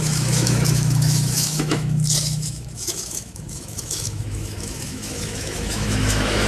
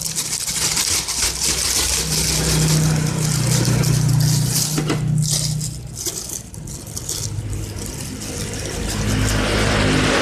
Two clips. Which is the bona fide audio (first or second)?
second